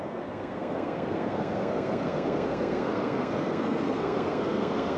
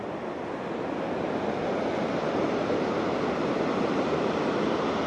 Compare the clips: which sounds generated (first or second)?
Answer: first